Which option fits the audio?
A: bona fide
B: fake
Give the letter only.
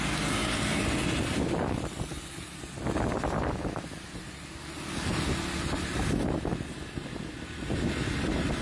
A